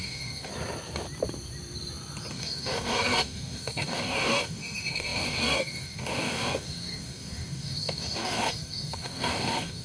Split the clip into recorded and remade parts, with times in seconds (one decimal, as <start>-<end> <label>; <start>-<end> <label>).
0.0-0.5 remade; 0.5-2.3 recorded; 2.3-9.8 remade